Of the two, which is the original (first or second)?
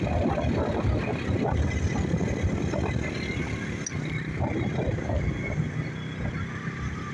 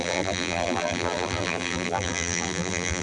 first